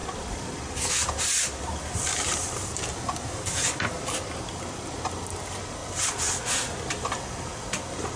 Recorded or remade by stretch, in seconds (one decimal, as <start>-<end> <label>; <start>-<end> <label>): 0.0-8.2 recorded